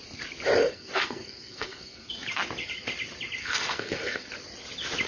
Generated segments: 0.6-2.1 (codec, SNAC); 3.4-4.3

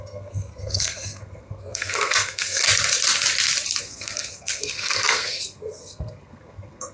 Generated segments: 0.0-2.7 (codec, SNAC); 3.8-6.9

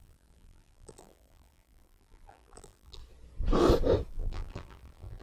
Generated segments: 0.0-3.0 (vocoder, BigVGAN v2); 4.1-5.2

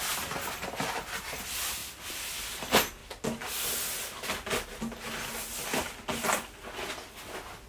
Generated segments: none

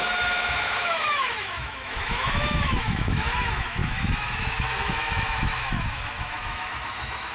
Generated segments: 0.0-7.3 (autoencoder, DAC-VAE)

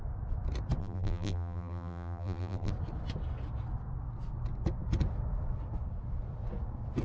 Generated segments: 0.8-2.7 (vocoder, BigVGAN v2)

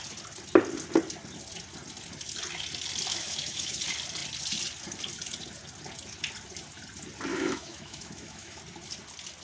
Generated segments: 3.1-3.8 (autoencoder, DAC-VAE); 7.3-8.6

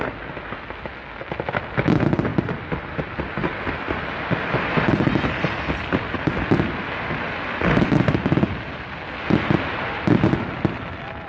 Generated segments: none